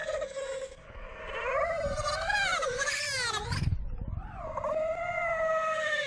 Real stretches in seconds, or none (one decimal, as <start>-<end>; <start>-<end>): 1.2-6.1